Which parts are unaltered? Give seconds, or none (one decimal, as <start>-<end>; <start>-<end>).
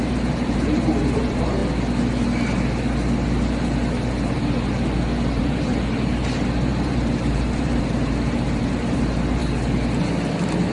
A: 1.6-5.4; 9.4-10.7